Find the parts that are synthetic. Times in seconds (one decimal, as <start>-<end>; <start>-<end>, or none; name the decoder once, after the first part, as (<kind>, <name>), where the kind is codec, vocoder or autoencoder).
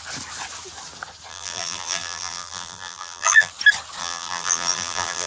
1.3-3.5 (vocoder, BigVGAN v2); 4.0-5.3